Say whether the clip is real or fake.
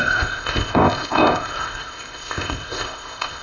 fake